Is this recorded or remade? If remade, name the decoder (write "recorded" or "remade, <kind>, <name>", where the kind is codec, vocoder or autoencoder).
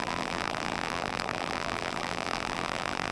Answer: remade, vocoder, BigVGAN v2